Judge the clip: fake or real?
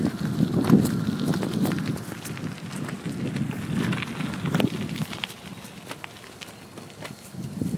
real